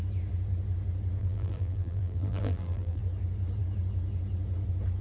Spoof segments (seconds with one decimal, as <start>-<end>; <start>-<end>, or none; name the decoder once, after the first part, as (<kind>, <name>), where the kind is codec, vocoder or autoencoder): 1.2-3.0 (vocoder, BigVGAN v2)